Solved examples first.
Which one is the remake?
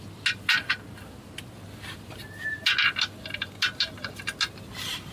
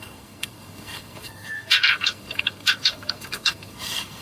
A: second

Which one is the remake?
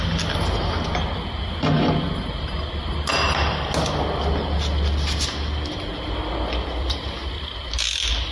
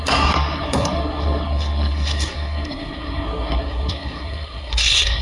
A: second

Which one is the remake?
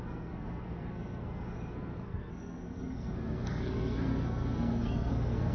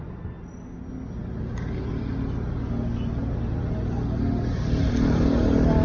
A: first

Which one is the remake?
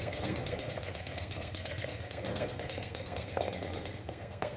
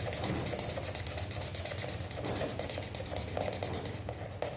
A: first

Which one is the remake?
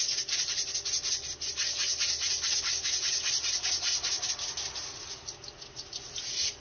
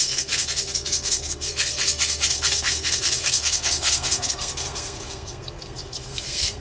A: second